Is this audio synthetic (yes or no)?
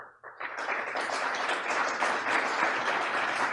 yes